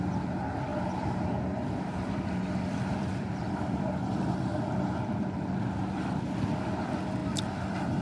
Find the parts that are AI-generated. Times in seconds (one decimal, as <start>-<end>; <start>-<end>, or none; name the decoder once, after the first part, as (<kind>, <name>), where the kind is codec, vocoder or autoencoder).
0.7-4.8 (vocoder, BigVGAN v2); 7.2-8.0

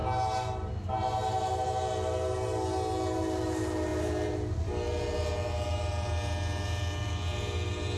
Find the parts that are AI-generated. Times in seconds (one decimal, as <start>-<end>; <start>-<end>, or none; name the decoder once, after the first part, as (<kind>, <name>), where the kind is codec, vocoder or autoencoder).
none